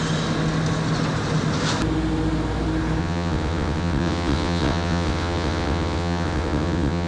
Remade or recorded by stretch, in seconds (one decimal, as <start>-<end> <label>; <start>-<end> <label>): 0.0-3.0 recorded; 3.0-7.1 remade